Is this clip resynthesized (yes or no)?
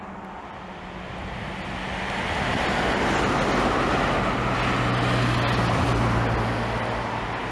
no